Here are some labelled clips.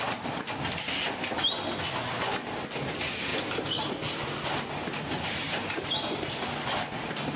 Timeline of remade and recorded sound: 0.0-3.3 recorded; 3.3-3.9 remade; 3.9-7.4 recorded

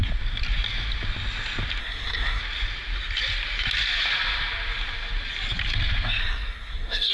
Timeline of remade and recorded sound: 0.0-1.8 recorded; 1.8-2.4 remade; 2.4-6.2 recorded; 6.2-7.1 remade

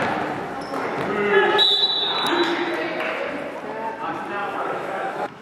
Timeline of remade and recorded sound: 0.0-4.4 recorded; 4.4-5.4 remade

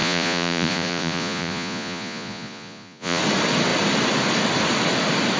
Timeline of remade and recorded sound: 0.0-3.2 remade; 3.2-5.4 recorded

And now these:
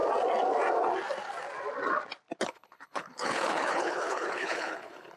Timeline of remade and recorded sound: 0.0-2.4 recorded; 2.4-5.2 remade